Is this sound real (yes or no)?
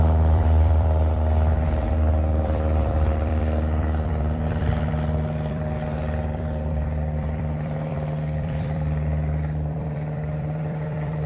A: no